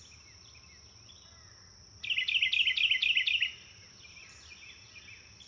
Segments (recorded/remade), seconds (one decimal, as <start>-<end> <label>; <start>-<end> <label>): 0.0-5.5 recorded